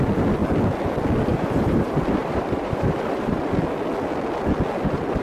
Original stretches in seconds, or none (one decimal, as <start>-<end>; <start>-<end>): 0.0-1.3; 3.4-5.2